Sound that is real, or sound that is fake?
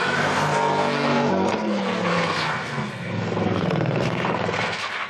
fake